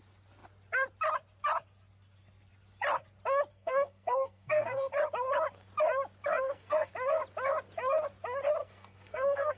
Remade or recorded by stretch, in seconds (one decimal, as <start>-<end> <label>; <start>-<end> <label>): 0.0-3.5 recorded; 3.5-4.9 remade; 4.9-6.3 recorded; 6.3-6.9 remade; 6.9-8.6 recorded; 8.6-9.6 remade